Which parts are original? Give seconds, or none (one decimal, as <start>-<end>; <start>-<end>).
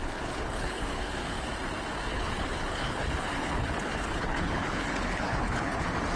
1.5-2.1; 5.8-6.2